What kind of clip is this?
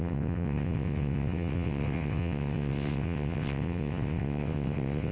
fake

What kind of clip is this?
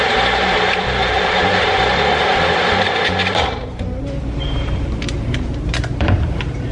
fake